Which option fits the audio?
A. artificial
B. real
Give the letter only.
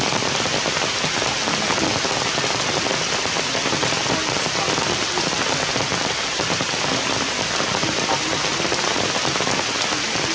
B